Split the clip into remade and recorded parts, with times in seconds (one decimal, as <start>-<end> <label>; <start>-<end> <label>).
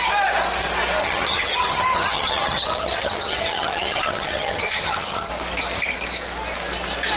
0.0-1.0 recorded; 1.0-5.3 remade; 5.3-7.2 recorded